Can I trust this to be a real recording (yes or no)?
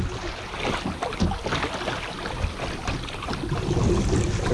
yes